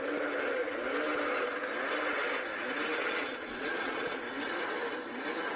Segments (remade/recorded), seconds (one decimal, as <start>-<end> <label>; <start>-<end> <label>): 0.0-3.0 recorded; 3.0-4.2 remade; 4.2-5.6 recorded